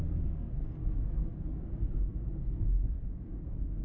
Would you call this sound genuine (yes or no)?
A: no